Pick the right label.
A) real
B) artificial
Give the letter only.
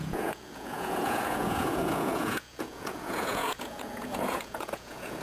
B